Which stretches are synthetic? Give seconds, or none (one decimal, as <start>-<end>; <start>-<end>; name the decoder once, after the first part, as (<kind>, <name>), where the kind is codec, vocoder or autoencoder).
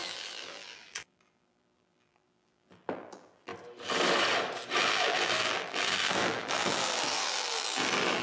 0.0-3.5 (vocoder, BigVGAN v2); 4.8-8.2